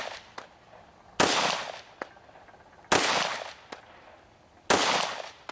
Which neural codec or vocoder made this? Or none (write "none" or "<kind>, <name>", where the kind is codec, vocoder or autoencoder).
none